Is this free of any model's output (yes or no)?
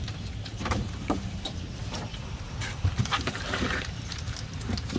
no